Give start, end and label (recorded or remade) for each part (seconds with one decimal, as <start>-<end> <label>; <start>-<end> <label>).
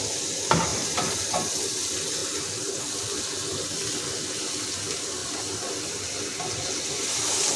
0.0-0.7 recorded; 0.7-1.2 remade; 1.2-2.2 recorded; 2.2-2.8 remade; 2.8-7.6 recorded